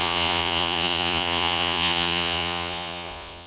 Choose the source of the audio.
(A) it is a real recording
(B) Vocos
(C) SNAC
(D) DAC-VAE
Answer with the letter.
B